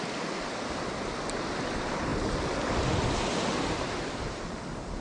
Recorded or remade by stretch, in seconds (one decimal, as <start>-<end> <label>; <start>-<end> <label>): 0.0-5.0 recorded